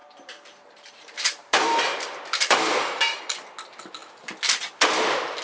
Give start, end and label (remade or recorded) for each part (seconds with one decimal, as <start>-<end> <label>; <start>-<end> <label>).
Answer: 0.0-3.2 remade; 3.2-5.4 recorded